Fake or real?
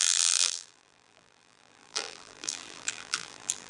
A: fake